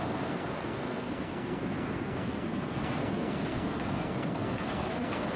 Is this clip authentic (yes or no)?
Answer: no